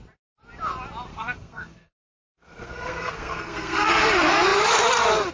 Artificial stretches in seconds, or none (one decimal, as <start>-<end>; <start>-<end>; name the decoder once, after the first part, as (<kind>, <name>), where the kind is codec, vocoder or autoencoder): 1.1-3.9 (codec, SNAC)